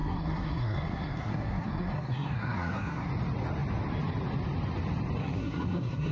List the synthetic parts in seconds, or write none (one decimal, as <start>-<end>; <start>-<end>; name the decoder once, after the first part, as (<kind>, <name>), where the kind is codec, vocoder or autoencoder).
0.0-3.1 (codec, SNAC); 5.2-6.1